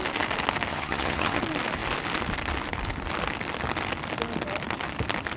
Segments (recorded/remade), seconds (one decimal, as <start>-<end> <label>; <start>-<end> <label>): 0.0-0.7 recorded; 0.7-1.4 remade; 1.4-5.4 recorded